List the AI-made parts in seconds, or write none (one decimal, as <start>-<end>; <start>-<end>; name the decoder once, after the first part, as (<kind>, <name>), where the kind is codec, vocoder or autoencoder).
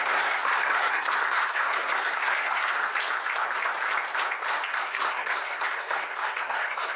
0.0-2.8 (codec, SNAC); 4.8-7.0